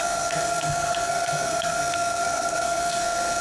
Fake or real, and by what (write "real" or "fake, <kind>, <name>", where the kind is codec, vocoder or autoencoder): fake, codec, SNAC